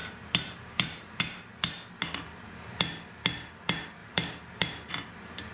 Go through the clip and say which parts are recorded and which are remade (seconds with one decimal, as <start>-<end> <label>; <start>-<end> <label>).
0.0-1.2 remade; 1.2-4.0 recorded; 4.0-4.9 remade; 4.9-5.5 recorded